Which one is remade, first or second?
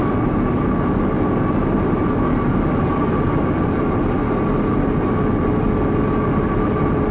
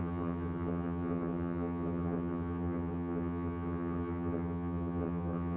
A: second